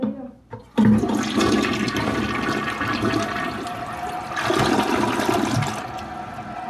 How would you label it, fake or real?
real